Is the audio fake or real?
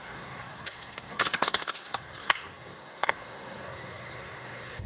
fake